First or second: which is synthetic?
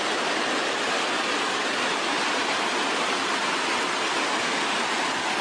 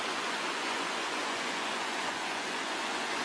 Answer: second